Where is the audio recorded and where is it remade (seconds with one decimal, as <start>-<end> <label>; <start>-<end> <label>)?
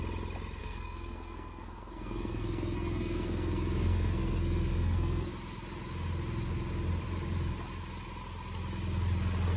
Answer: 0.0-0.6 recorded; 0.6-5.3 remade; 5.3-9.6 recorded